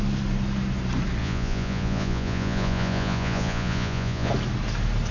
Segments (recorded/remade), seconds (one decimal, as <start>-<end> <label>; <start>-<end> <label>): 0.0-1.2 recorded; 1.2-4.3 remade; 4.3-5.1 recorded